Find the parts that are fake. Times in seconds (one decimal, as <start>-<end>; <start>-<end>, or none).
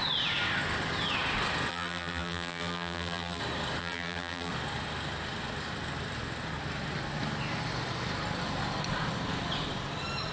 1.7-3.4; 3.8-4.5